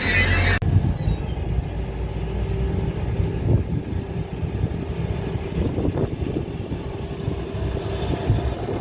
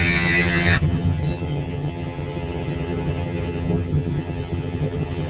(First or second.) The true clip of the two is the first